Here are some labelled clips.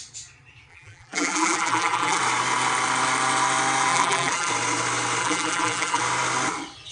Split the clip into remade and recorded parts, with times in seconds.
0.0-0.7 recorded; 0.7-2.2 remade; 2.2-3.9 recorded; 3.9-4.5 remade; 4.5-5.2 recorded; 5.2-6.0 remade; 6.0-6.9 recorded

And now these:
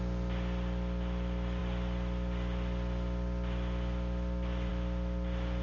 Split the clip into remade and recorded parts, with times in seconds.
0.0-5.6 recorded